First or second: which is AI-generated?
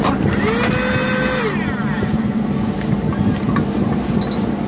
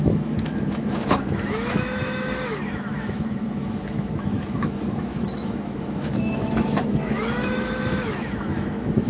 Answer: second